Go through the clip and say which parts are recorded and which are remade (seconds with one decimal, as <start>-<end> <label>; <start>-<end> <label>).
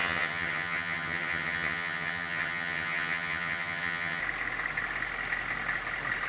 0.0-4.2 remade; 4.2-6.3 recorded